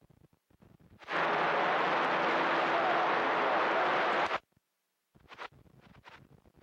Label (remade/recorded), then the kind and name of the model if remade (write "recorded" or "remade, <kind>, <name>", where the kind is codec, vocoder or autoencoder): recorded